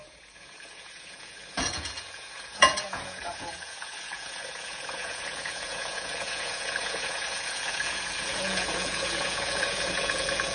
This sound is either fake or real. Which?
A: fake